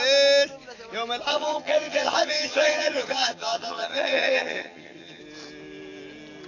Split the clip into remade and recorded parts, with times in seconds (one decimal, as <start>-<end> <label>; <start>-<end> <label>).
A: 0.0-1.3 recorded; 1.3-5.2 remade; 5.2-6.5 recorded